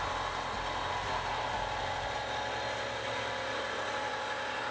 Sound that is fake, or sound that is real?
real